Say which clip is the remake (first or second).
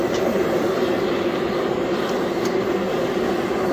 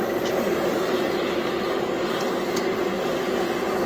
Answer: first